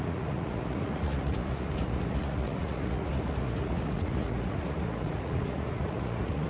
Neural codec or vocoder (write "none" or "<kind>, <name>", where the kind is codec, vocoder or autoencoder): vocoder, Vocos